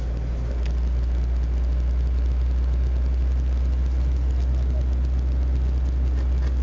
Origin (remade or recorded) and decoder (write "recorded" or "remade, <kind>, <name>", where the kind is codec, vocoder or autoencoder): recorded